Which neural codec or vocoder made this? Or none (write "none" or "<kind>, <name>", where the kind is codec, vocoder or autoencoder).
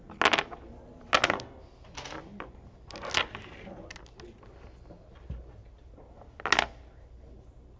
none